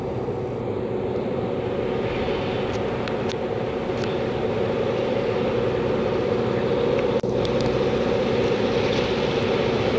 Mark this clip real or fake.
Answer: real